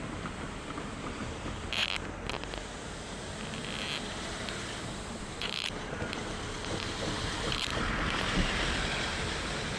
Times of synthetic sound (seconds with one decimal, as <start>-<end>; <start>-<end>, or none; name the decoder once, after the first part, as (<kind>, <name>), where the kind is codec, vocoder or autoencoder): 0.0-1.8 (vocoder, BigVGAN v2); 5.2-9.8